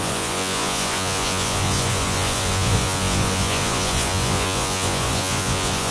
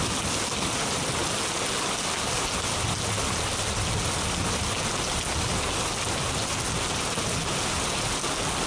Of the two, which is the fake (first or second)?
first